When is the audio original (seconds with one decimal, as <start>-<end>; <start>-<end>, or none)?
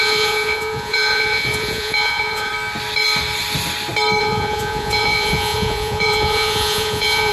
2.5-4.2